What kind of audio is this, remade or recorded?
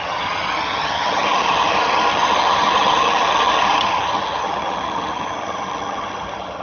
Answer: remade